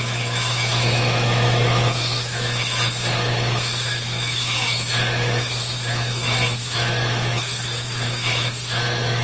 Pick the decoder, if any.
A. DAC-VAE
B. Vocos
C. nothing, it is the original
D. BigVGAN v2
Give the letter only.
A